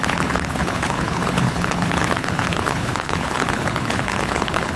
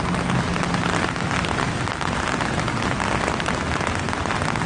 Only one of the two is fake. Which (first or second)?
first